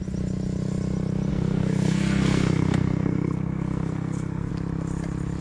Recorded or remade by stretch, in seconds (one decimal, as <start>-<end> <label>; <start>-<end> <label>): 0.0-1.3 recorded; 1.3-4.5 remade; 4.5-5.4 recorded